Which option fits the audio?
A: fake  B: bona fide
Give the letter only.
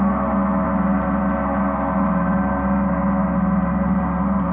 B